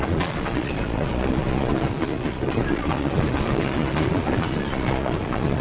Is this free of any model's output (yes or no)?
no